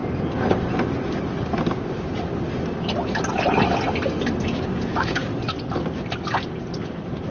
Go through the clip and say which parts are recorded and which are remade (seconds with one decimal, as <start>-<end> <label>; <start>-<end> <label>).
0.0-4.4 recorded; 4.4-5.3 remade; 5.3-7.3 recorded